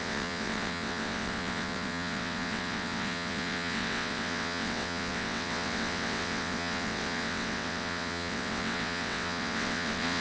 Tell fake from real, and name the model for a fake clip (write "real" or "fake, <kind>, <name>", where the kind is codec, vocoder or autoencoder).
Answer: fake, vocoder, WaveNeXt